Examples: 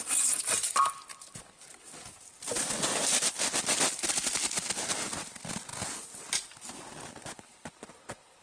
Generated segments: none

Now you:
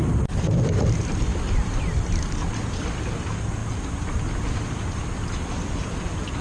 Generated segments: none

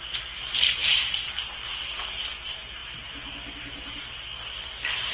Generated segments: 0.0-5.1

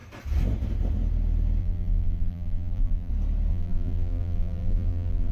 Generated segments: 1.6-3.1; 3.5-5.3

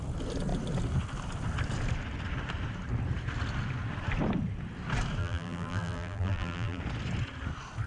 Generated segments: 5.2-6.8